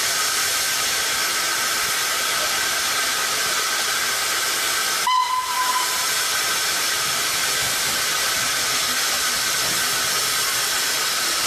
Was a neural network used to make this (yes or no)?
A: no